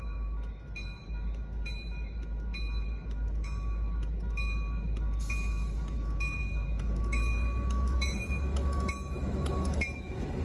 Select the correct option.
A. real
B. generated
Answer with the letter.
B